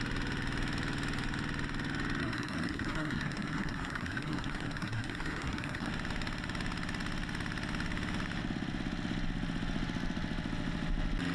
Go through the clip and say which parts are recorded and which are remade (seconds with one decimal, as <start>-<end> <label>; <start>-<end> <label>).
0.0-2.2 recorded; 2.2-5.9 remade; 5.9-11.3 recorded